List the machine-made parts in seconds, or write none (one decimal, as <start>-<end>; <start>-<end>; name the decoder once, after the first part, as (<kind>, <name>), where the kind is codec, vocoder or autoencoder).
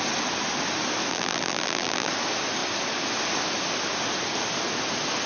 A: 1.1-2.1 (vocoder, BigVGAN v2)